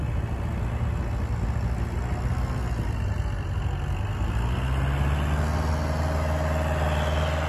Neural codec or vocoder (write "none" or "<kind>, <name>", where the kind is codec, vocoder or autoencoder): none